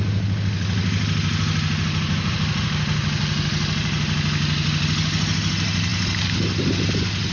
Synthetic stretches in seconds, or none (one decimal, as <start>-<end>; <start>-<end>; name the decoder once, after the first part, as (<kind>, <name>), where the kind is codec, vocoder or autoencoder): none